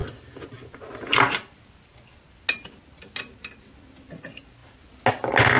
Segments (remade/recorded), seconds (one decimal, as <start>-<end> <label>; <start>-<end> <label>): 0.0-5.6 recorded